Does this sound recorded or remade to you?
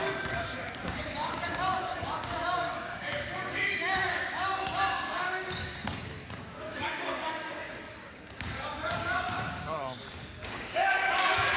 remade